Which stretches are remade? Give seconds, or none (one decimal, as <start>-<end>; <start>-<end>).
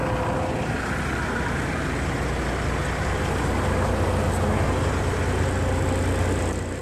none